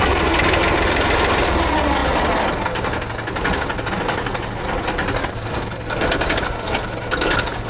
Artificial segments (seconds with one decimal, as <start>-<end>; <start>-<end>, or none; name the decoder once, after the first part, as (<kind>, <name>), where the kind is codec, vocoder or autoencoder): none